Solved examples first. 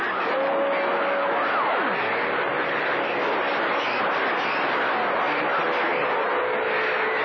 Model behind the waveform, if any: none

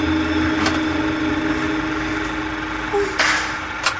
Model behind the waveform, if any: none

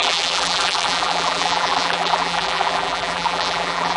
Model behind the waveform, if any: vocoder, BigVGAN v2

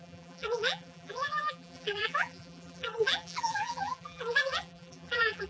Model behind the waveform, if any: vocoder, BigVGAN v2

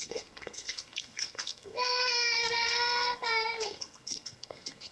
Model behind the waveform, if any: codec, SNAC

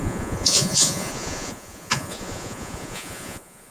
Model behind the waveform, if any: vocoder, Vocos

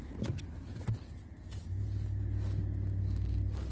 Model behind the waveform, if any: none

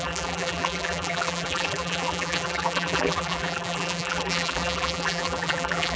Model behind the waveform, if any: vocoder, BigVGAN v2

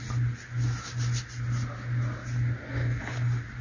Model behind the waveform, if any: none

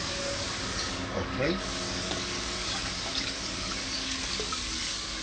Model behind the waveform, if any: codec, DAC